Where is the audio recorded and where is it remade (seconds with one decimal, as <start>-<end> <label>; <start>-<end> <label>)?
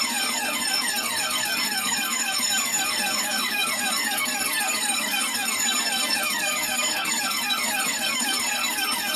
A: 0.0-9.2 remade